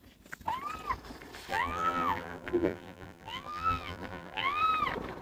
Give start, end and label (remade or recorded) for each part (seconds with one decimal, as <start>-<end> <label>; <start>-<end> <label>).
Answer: 0.0-1.5 recorded; 1.5-4.6 remade; 4.6-5.2 recorded